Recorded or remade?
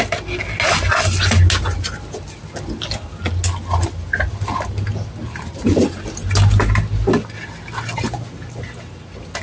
recorded